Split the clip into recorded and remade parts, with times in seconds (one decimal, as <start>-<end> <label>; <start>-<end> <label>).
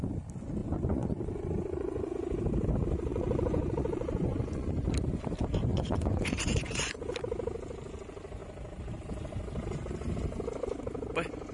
0.0-0.6 recorded; 0.6-2.1 remade; 2.1-3.1 recorded; 3.1-4.7 remade; 4.7-5.7 recorded; 5.7-7.1 remade; 7.1-11.5 recorded